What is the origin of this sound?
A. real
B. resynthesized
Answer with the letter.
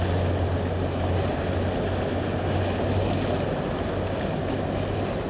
A